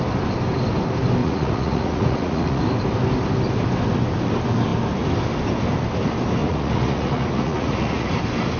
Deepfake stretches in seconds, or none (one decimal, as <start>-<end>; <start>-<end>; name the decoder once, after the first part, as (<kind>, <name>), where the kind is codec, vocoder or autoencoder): 1.2-2.6 (vocoder, Vocos); 6.4-8.1